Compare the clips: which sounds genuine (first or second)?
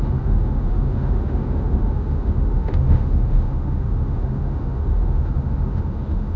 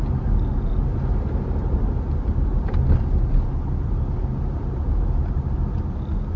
second